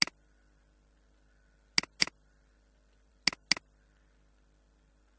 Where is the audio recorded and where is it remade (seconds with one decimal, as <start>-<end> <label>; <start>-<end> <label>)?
0.0-5.2 recorded

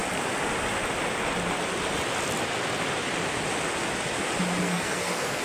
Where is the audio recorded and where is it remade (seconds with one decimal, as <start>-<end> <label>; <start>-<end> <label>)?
0.0-4.6 recorded; 4.6-5.4 remade

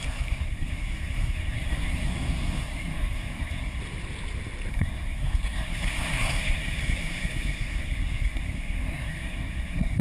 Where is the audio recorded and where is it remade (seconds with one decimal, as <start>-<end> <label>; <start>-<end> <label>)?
0.0-3.8 remade; 3.8-4.7 recorded; 4.7-10.0 remade

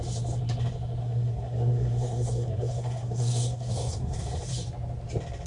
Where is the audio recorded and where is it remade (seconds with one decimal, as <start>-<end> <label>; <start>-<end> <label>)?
0.0-1.0 recorded; 1.0-4.3 remade; 4.3-5.5 recorded